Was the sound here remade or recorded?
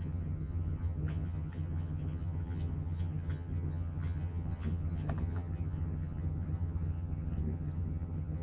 remade